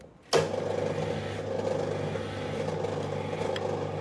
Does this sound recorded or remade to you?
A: recorded